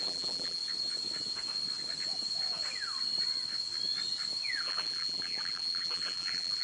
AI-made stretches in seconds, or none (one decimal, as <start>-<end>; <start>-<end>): 0.0-0.6; 4.6-6.6